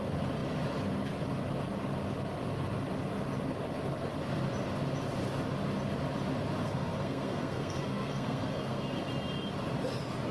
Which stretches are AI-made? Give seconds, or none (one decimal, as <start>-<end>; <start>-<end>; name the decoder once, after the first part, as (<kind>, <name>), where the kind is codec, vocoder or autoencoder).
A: 6.6-9.0 (codec, SNAC)